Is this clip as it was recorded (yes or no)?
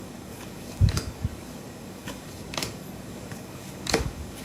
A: no